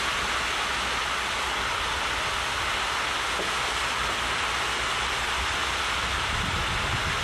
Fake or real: real